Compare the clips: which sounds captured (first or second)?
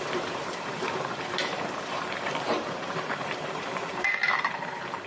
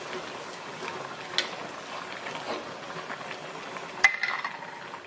second